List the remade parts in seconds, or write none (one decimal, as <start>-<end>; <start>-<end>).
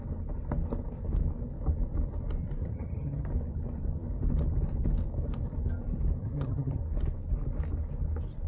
2.6-3.3; 6.2-6.8